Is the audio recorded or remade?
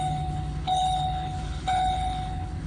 remade